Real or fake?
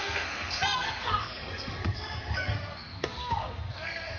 fake